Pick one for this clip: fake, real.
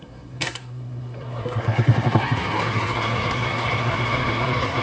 fake